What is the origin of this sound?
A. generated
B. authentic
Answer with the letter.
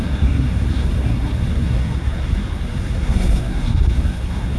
A